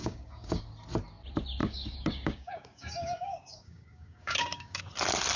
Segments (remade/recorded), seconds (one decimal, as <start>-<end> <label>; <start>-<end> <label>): 0.0-0.6 remade; 0.6-1.6 recorded; 1.6-4.8 remade; 4.8-5.4 recorded